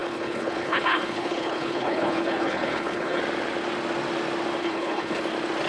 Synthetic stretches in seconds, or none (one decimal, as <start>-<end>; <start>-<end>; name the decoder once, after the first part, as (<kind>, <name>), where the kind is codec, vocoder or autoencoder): 0.0-3.2 (codec, HILCodec); 4.6-5.2